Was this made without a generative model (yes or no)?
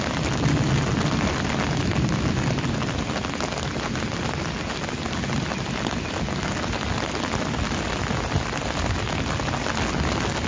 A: yes